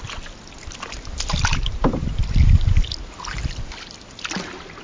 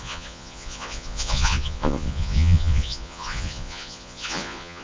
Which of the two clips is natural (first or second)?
first